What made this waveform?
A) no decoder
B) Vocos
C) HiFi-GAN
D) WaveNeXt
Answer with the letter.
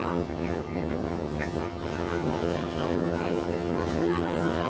C